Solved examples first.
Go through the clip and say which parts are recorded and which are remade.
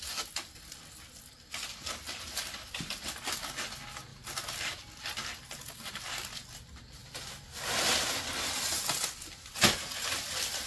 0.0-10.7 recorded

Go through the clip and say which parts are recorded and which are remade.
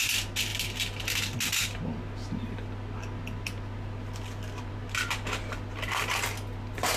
0.0-7.0 recorded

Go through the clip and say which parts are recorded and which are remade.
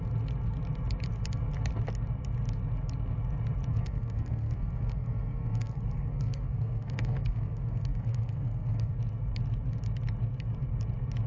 0.0-3.7 recorded; 3.7-8.9 remade; 8.9-11.3 recorded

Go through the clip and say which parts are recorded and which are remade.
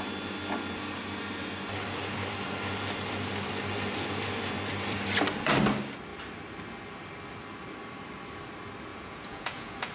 0.0-8.9 recorded; 8.9-9.9 remade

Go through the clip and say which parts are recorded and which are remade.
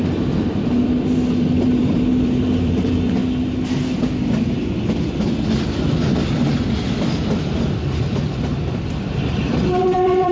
0.0-3.2 remade; 3.2-8.4 recorded; 8.4-10.3 remade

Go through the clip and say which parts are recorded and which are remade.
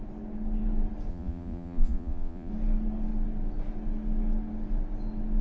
0.0-1.1 recorded; 1.1-2.5 remade; 2.5-5.4 recorded